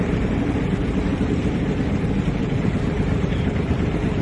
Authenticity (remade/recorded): remade